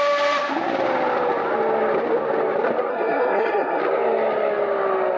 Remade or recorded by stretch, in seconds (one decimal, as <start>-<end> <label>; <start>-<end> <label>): 0.0-2.9 recorded; 2.9-3.8 remade; 3.8-5.2 recorded